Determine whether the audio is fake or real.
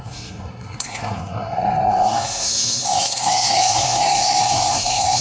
fake